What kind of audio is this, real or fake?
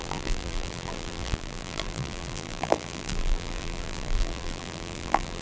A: fake